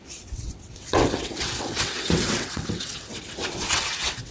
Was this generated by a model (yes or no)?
yes